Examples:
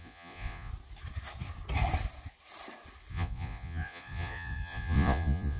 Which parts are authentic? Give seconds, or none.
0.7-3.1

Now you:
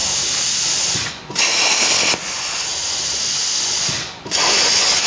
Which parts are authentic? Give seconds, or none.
0.0-0.6; 1.5-2.1

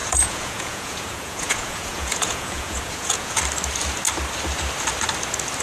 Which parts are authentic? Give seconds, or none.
3.4-5.6

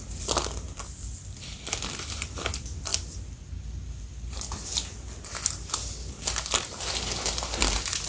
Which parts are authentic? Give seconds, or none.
0.0-8.1

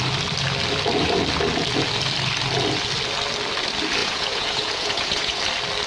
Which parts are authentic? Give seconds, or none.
0.0-4.0; 5.4-5.9

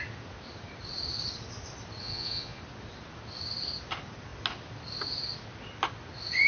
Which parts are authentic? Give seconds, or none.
0.0-2.0; 2.6-6.5